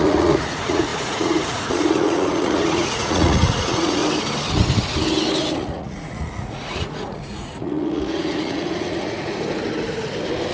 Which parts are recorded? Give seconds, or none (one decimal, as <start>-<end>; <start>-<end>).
4.0-5.5; 9.3-10.5